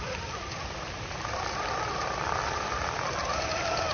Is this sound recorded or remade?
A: recorded